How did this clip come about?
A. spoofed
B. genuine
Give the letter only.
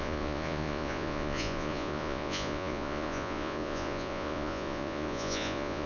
A